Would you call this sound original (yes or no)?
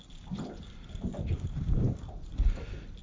yes